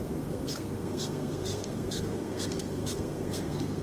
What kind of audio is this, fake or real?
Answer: fake